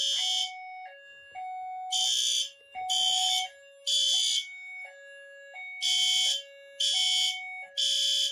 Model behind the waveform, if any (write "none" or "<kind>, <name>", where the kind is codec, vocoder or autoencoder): none